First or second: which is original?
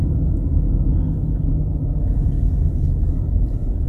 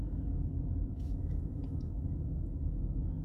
first